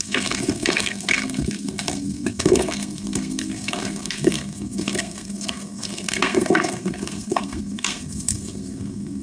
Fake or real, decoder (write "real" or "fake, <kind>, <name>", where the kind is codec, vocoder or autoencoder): fake, codec, SNAC